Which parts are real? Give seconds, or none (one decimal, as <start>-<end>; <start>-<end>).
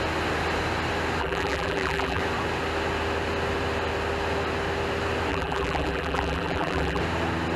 0.0-1.2; 2.2-5.3; 7.0-7.6